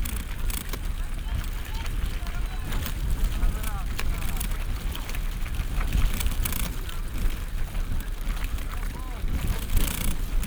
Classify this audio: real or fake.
real